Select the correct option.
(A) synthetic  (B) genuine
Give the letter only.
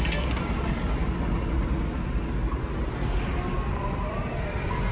B